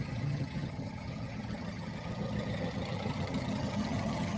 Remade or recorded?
remade